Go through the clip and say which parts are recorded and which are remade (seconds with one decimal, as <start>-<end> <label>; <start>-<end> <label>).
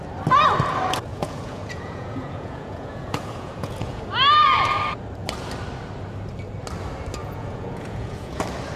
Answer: 0.0-1.1 recorded; 1.1-4.0 remade; 4.0-7.2 recorded; 7.2-8.4 remade; 8.4-8.8 recorded